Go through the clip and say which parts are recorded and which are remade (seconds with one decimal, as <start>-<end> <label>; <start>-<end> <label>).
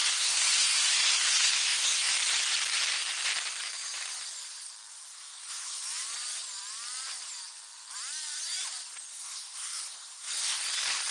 0.0-2.1 remade; 2.1-4.9 recorded; 4.9-5.8 remade; 5.8-9.1 recorded; 9.1-10.6 remade; 10.6-11.1 recorded